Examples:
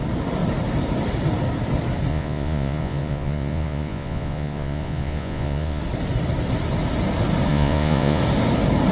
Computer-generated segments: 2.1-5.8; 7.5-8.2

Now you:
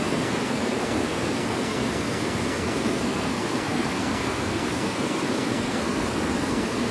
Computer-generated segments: 0.0-6.9

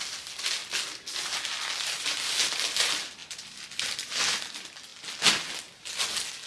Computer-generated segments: none

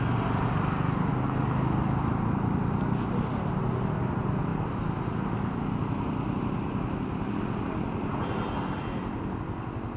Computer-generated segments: none

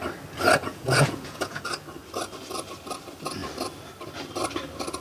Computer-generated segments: 0.6-1.6

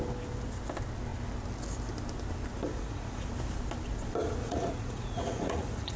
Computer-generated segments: 2.7-3.3; 4.4-6.0

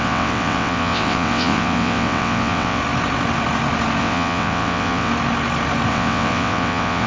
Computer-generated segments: 0.0-2.8; 4.0-5.1; 5.9-7.1

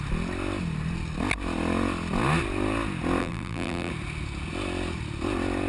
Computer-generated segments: 3.2-3.9